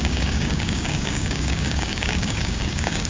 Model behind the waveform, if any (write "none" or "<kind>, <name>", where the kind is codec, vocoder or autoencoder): codec, DAC